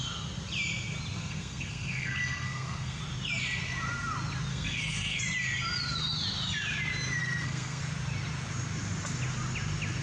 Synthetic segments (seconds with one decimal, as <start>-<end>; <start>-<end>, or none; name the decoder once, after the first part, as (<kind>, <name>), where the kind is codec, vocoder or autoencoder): 1.2-3.0 (codec, SNAC); 4.5-5.2; 7.2-7.8